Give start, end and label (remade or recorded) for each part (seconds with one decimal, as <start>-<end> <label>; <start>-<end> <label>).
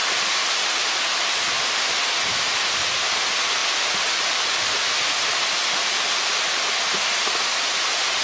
0.0-8.2 recorded